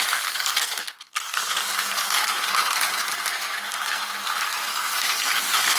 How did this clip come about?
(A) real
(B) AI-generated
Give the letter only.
B